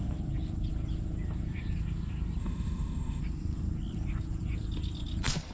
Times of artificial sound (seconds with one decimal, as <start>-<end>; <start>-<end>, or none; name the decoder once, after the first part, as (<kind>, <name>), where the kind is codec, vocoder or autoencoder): 2.4-3.2 (autoencoder, DAC-VAE)